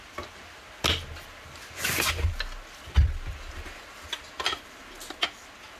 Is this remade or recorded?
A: recorded